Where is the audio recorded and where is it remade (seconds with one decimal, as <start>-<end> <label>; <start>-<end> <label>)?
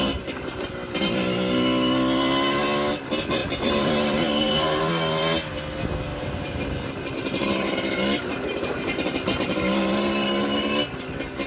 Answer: 0.0-3.4 recorded; 3.4-4.8 remade; 4.8-6.1 recorded; 6.1-11.0 remade; 11.0-11.5 recorded